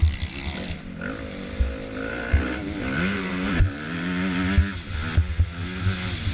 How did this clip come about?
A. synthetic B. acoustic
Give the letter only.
B